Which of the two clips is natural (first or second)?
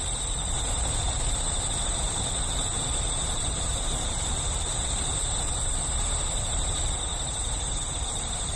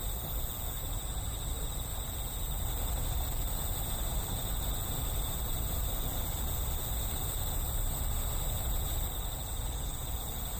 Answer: second